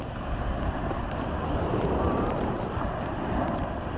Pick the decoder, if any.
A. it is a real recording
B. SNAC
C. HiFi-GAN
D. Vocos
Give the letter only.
A